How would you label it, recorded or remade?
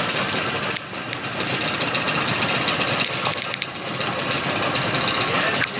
recorded